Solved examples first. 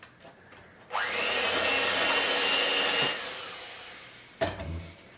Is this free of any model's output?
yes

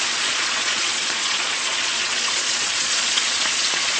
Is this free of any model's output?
no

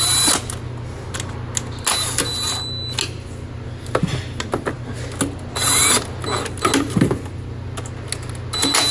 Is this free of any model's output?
yes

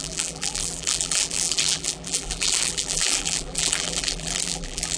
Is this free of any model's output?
no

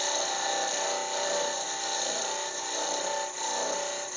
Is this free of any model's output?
yes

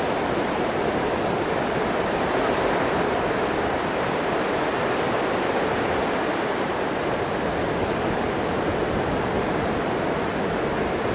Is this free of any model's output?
no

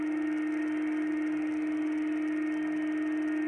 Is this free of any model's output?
yes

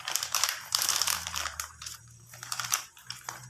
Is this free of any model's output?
no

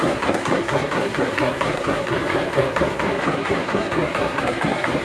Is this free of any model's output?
no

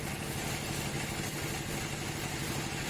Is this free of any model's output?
yes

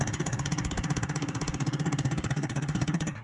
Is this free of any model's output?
no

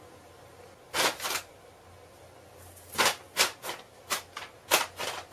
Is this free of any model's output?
yes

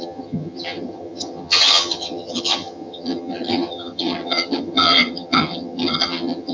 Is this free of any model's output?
no